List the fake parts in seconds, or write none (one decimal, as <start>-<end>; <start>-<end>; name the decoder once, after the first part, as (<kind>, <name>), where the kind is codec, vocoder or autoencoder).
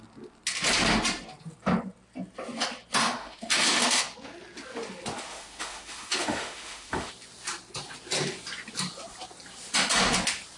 3.0-4.0 (autoencoder, DAC-VAE); 5.3-7.1